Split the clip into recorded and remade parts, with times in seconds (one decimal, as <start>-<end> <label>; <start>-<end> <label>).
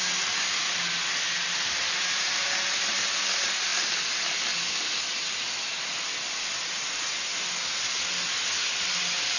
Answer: 0.0-9.4 recorded